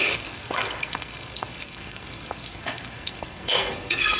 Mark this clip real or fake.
fake